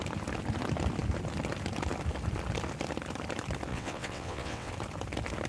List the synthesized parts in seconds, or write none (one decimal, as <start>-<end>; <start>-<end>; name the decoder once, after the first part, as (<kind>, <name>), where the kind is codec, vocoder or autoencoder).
3.7-4.7 (vocoder, WaveNeXt)